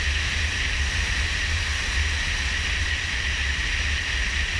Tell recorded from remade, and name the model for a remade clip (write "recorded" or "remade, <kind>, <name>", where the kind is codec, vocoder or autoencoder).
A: recorded